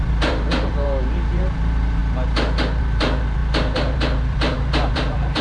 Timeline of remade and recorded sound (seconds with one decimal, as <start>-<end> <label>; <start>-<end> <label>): 0.0-2.0 remade; 2.0-2.8 recorded; 2.8-5.4 remade

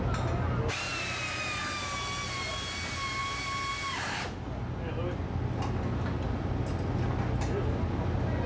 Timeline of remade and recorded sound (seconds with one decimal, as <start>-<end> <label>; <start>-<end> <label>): 0.0-8.5 recorded

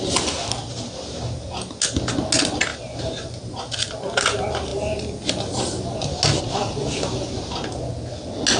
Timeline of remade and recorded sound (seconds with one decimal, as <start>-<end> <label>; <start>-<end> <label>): 0.0-2.7 recorded; 2.7-3.9 remade; 3.9-8.6 recorded

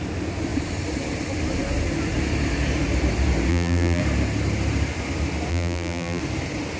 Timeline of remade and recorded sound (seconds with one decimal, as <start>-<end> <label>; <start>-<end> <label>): 0.0-3.5 recorded; 3.5-4.0 remade; 4.0-5.5 recorded; 5.5-6.2 remade; 6.2-6.8 recorded

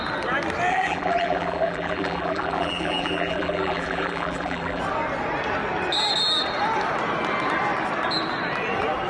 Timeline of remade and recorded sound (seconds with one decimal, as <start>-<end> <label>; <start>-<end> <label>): 0.0-0.7 recorded; 0.7-4.8 remade; 4.8-9.1 recorded

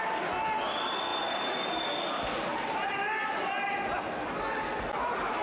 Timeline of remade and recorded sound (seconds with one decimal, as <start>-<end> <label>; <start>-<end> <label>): 0.0-2.5 recorded; 2.5-3.0 remade; 3.0-5.4 recorded

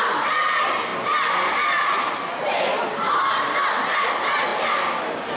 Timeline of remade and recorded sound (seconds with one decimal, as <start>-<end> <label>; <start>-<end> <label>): 0.0-5.4 recorded